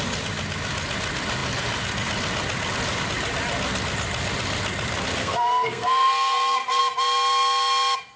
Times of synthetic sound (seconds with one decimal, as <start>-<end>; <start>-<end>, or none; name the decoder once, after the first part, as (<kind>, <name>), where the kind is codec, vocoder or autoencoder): 5.2-6.8 (codec, SNAC)

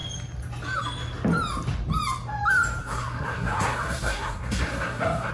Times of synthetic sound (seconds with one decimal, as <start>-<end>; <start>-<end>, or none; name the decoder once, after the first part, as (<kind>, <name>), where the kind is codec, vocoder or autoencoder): 2.8-5.3 (codec, SNAC)